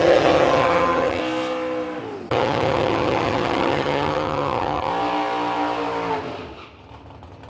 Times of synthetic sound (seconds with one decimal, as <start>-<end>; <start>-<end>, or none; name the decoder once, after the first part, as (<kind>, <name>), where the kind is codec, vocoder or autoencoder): 0.0-1.2 (vocoder, HiFi-GAN); 2.3-4.9